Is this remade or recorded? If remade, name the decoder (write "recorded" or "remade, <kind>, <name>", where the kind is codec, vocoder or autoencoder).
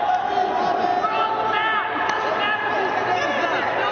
recorded